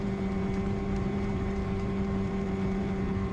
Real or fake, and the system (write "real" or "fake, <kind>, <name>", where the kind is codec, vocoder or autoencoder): fake, vocoder, BigVGAN v2